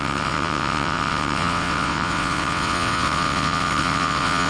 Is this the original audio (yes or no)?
no